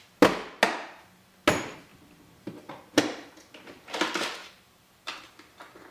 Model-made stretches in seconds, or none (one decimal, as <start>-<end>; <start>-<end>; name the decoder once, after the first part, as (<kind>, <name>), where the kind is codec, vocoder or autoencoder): 4.4-5.3 (vocoder, BigVGAN v2)